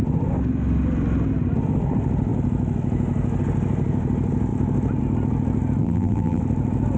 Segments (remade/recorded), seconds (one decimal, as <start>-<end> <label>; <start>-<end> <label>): 0.0-5.8 recorded; 5.8-6.4 remade; 6.4-7.0 recorded

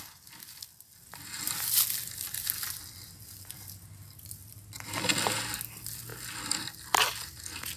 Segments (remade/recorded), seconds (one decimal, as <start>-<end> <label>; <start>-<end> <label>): 0.0-7.8 recorded

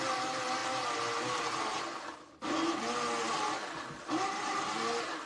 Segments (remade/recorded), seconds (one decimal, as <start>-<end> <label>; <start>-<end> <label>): 0.0-5.3 recorded

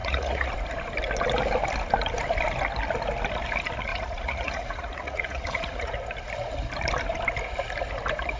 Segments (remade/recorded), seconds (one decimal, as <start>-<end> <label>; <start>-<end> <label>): 0.0-0.5 remade; 0.5-3.9 recorded; 3.9-5.9 remade; 5.9-8.4 recorded

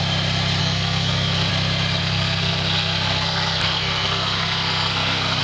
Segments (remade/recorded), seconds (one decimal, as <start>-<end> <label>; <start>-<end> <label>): 0.0-0.6 recorded; 0.6-1.5 remade; 1.5-2.0 recorded; 2.0-5.4 remade